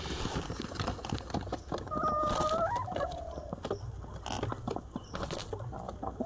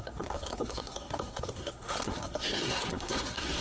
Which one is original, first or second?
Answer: first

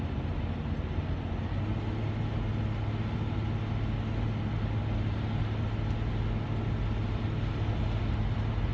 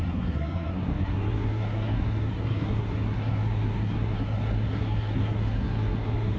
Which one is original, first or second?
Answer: first